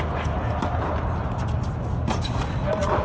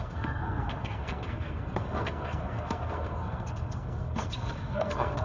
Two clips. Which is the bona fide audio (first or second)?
first